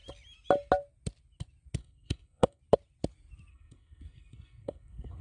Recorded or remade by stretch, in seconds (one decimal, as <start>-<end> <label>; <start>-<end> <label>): 0.0-1.8 recorded; 1.8-2.6 remade; 2.6-3.5 recorded; 3.5-5.2 remade